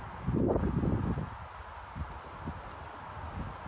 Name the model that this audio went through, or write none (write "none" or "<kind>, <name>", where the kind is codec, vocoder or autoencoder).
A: none